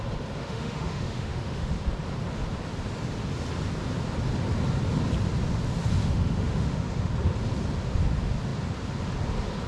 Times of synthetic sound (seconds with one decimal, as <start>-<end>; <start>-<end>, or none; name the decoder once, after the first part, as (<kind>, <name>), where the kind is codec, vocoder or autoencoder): 0.4-1.7 (autoencoder, DAC-VAE); 6.0-7.1